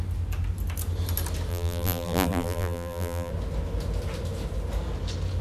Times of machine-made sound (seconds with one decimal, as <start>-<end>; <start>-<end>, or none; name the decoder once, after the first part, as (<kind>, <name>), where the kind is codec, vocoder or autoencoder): 1.5-3.3 (vocoder, BigVGAN v2)